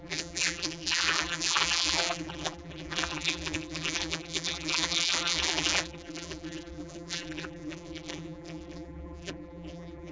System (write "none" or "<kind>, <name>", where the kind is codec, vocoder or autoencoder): vocoder, BigVGAN v2